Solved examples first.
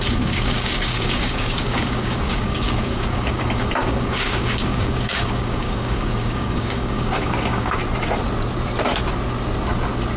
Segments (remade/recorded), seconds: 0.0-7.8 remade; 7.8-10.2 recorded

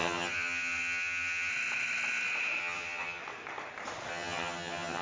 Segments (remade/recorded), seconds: 0.0-1.5 remade; 1.5-2.6 recorded; 2.6-3.2 remade; 3.2-4.1 recorded; 4.1-5.0 remade

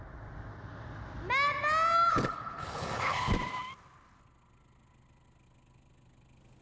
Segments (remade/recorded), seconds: 0.0-2.1 recorded; 2.1-3.3 remade; 3.3-6.6 recorded